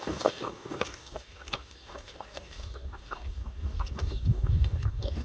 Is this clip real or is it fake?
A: fake